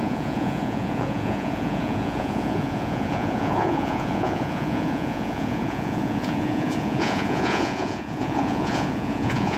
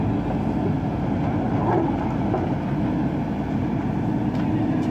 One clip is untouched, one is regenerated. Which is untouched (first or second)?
second